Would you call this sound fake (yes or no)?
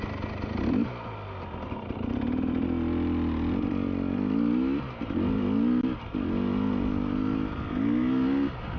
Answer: no